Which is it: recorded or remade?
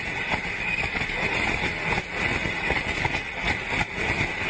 recorded